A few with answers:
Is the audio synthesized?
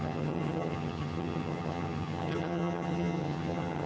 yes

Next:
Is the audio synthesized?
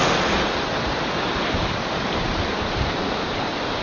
no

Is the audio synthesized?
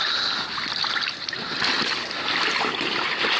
no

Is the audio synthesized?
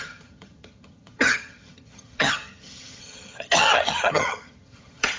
yes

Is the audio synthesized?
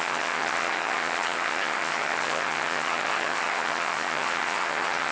yes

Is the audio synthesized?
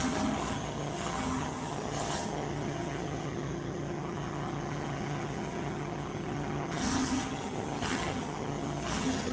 yes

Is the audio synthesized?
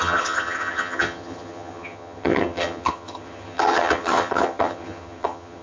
yes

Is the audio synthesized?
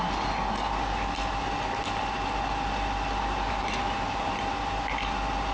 no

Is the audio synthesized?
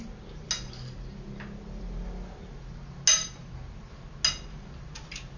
no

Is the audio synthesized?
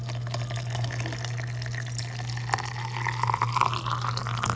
no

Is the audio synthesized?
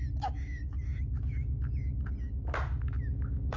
no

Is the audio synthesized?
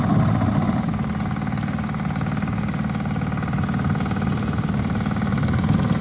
no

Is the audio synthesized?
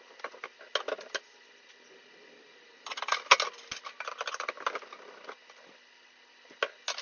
no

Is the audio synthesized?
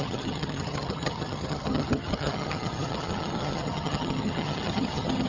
yes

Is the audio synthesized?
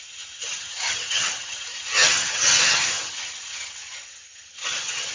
yes